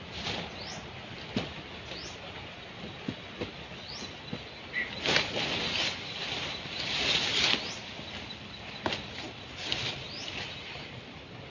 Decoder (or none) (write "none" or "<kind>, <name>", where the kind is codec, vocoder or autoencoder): none